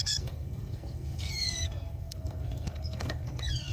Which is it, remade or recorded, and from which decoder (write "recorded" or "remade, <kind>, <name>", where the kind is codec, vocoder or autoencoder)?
remade, codec, SNAC